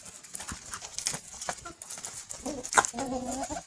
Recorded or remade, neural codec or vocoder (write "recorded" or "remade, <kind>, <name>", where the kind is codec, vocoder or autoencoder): recorded